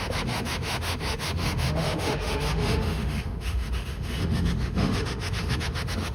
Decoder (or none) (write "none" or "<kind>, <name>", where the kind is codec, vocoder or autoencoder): autoencoder, DAC-VAE